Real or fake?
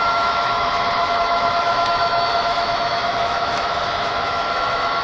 fake